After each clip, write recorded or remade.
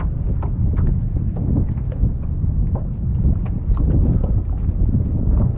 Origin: recorded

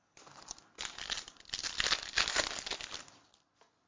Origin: recorded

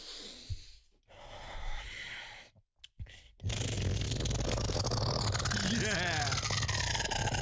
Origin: recorded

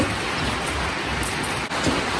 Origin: recorded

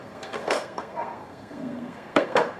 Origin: remade